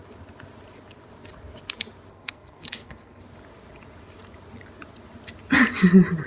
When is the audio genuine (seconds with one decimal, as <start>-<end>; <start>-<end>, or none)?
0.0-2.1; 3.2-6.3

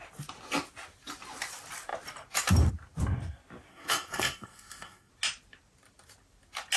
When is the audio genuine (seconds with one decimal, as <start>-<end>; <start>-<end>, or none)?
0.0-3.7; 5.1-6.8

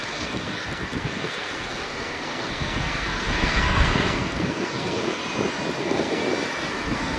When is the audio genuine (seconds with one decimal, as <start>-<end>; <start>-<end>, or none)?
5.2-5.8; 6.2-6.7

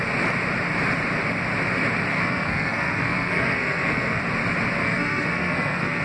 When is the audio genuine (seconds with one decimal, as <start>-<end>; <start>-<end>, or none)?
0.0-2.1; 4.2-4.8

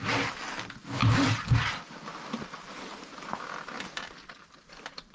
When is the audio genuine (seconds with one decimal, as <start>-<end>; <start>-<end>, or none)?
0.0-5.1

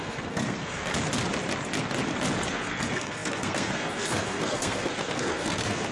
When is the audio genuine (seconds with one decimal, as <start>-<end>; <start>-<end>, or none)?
0.9-2.5

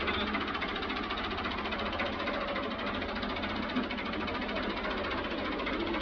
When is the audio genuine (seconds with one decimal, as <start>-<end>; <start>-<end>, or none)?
0.0-6.0

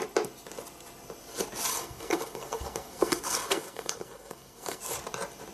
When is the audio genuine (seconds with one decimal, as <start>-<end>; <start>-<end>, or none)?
0.0-1.7; 4.8-5.5